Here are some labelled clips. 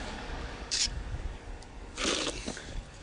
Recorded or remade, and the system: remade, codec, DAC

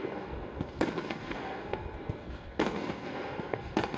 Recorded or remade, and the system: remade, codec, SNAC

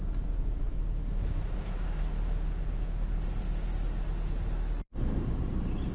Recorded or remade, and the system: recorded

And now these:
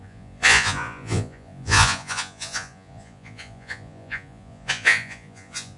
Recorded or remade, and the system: remade, vocoder, Vocos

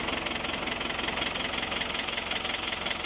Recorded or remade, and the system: recorded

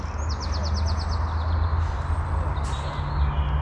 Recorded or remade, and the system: recorded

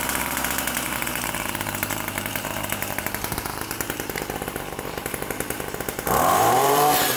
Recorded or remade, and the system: remade, vocoder, BigVGAN v2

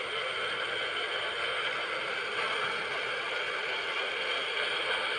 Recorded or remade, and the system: recorded